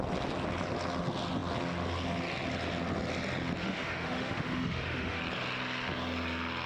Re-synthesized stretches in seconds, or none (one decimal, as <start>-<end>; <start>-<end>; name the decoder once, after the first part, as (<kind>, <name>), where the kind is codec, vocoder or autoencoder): 3.6-5.2 (autoencoder, DAC-VAE)